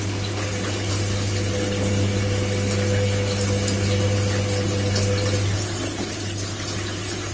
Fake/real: real